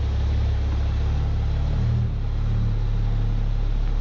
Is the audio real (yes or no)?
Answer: yes